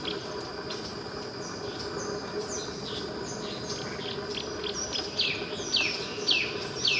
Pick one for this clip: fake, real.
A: real